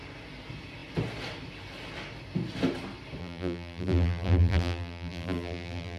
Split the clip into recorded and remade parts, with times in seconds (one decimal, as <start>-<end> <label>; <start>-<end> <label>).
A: 0.0-3.2 recorded; 3.2-6.0 remade